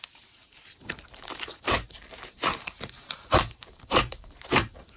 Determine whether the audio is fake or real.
fake